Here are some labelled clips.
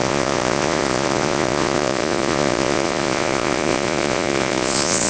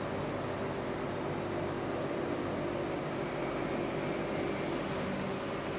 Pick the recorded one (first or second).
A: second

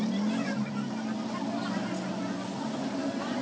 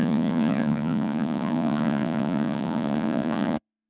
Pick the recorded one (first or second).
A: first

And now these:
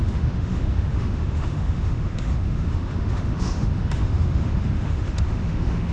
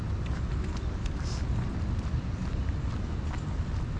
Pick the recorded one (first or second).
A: second